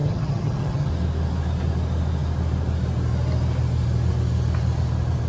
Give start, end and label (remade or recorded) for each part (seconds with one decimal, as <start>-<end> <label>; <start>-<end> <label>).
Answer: 0.0-0.9 remade; 0.9-5.3 recorded